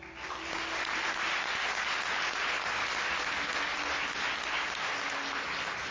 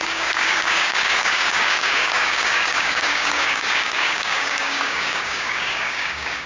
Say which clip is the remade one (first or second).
second